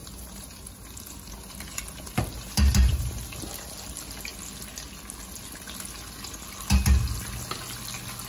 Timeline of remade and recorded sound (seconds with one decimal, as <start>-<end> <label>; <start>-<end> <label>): 0.0-3.1 remade; 3.1-8.3 recorded